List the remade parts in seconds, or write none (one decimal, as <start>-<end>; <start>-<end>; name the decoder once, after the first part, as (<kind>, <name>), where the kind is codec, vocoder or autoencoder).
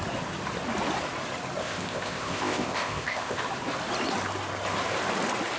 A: 1.6-3.4 (codec, ZipCodec)